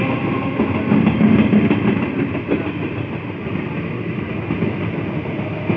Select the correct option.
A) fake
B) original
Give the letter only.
B